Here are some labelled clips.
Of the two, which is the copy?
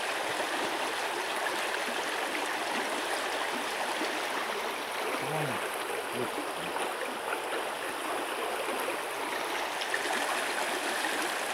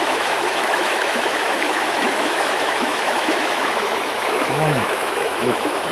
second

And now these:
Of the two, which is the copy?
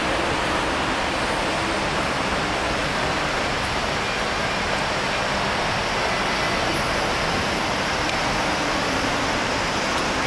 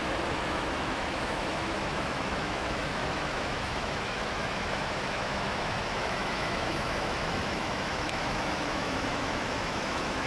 second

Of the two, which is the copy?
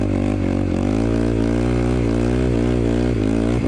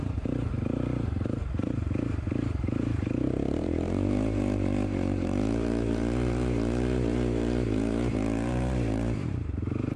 second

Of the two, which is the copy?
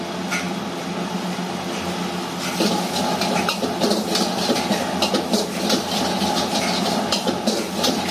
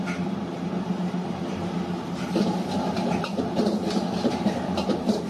second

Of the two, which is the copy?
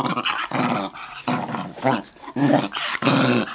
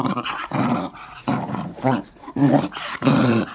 second